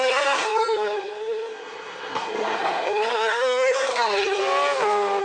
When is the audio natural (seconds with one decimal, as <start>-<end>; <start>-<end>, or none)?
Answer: 4.4-5.2